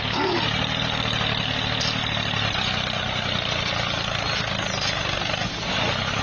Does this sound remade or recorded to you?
recorded